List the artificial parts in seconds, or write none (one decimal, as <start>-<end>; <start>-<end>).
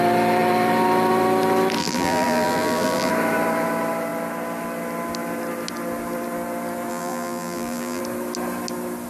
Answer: 1.8-3.1; 6.9-8.0